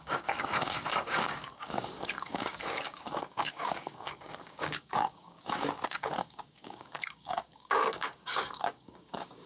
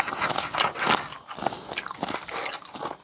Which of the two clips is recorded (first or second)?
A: second